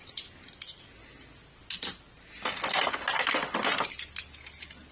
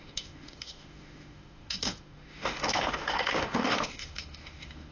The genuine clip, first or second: first